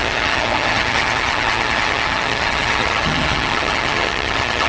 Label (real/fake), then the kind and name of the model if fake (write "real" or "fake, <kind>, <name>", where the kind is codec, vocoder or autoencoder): fake, vocoder, HiFi-GAN